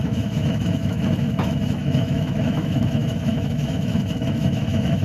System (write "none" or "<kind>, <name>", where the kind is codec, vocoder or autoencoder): autoencoder, DAC-VAE